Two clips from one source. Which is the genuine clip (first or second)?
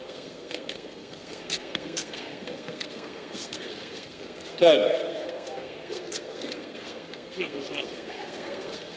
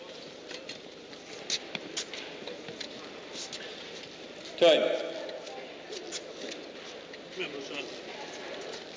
second